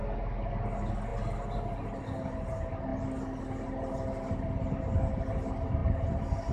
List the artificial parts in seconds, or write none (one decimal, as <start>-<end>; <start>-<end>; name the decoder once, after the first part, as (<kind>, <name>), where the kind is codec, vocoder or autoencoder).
none